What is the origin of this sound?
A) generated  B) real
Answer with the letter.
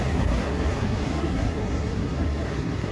A